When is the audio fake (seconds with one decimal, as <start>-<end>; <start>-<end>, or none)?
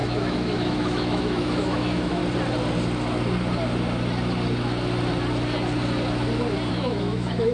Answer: 0.0-2.2; 6.7-7.5